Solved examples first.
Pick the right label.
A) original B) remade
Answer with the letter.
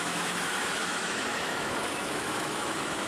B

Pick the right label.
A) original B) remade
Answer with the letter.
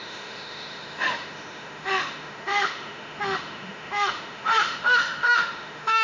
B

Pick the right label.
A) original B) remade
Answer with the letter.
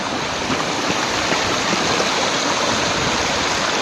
A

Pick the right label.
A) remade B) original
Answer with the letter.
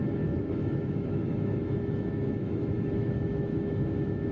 A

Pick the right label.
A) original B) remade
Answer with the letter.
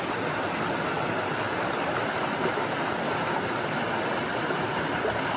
A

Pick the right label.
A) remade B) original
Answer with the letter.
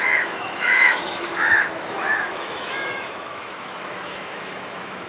A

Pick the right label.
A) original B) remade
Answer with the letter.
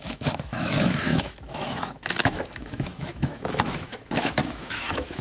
B